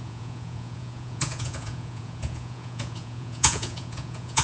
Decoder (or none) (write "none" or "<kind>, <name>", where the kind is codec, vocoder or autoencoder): vocoder, Vocos